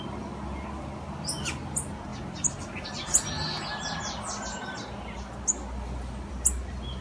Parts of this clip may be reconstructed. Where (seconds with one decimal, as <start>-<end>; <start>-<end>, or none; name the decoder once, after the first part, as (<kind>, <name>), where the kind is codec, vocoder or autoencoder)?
none